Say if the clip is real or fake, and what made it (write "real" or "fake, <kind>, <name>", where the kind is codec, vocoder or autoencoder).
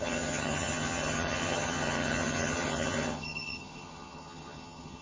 fake, vocoder, HiFi-GAN